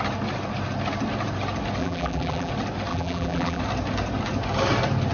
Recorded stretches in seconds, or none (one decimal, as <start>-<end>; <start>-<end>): 0.0-1.8; 2.5-2.9; 3.6-5.1